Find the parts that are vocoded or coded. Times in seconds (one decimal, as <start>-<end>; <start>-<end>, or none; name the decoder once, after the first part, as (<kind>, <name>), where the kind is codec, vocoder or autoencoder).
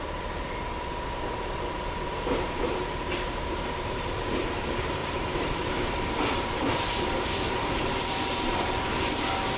5.0-9.0 (vocoder, BigVGAN v2)